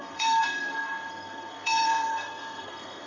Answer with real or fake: fake